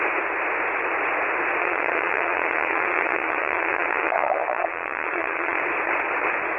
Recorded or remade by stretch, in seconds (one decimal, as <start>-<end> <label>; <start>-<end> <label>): 0.0-1.6 recorded; 1.6-5.6 remade; 5.6-6.6 recorded